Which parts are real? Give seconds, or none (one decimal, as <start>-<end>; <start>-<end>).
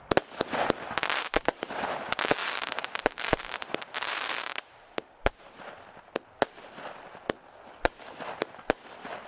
0.0-1.0; 1.7-2.4; 5.3-9.3